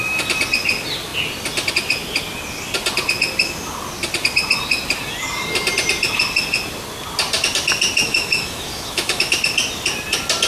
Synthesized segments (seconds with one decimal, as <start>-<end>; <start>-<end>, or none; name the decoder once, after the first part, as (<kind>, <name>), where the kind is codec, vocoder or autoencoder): 8.0-9.4 (autoencoder, DAC-VAE)